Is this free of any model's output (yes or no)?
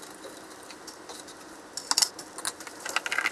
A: yes